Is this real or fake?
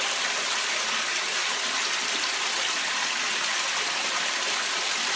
real